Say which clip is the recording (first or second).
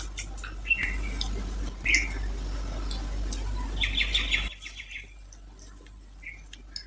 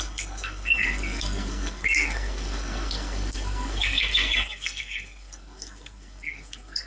first